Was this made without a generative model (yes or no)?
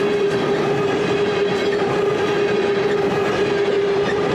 yes